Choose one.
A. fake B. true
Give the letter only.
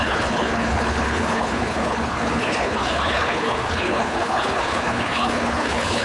A